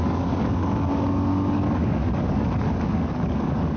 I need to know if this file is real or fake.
fake